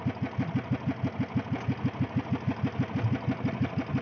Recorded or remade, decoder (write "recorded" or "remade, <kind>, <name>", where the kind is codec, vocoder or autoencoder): recorded